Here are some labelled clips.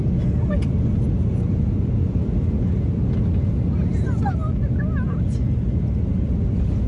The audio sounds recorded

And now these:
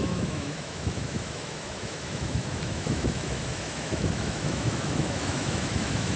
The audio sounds remade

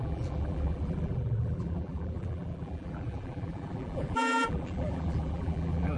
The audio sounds remade